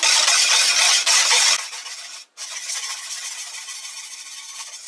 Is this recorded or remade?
recorded